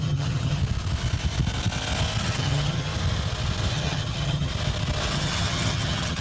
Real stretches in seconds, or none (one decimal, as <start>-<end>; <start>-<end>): 0.6-2.2; 2.9-3.7; 4.5-5.1